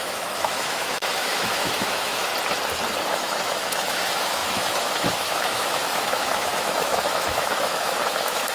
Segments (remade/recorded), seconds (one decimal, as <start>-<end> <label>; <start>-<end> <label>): 0.0-2.3 remade; 2.3-3.1 recorded; 3.1-8.5 remade